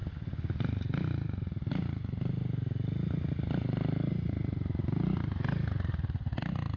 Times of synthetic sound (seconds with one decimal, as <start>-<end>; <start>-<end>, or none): none